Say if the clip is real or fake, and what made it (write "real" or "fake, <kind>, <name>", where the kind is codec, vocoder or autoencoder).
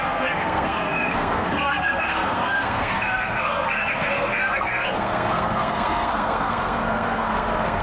fake, codec, SNAC